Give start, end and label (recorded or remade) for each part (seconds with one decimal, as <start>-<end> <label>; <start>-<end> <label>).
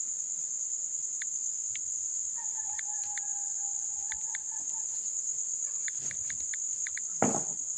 0.0-4.4 recorded; 4.4-5.0 remade; 5.0-7.8 recorded